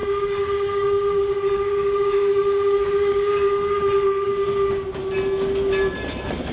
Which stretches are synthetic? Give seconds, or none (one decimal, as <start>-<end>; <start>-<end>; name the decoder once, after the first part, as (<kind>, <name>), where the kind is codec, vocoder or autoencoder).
0.0-4.3 (codec, DAC)